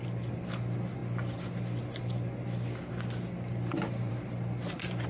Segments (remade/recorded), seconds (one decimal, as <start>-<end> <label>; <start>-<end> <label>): 0.0-5.1 recorded